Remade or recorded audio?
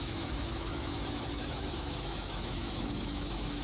remade